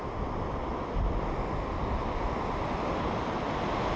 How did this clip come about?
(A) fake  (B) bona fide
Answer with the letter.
B